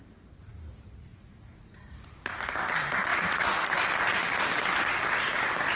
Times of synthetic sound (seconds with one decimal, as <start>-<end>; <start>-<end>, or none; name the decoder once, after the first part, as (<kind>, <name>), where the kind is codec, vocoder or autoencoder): 1.1-2.3 (vocoder, Vocos); 3.1-3.8